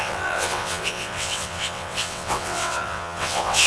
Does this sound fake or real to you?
fake